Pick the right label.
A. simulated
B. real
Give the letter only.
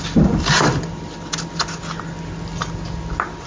B